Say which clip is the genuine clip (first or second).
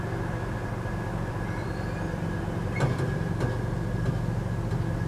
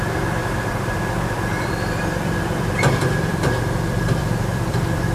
first